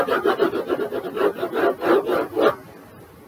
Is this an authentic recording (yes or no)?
yes